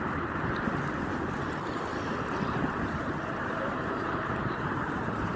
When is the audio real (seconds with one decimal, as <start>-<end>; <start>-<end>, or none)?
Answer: 0.0-1.9